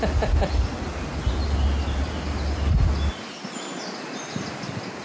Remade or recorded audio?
recorded